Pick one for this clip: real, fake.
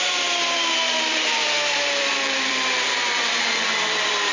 fake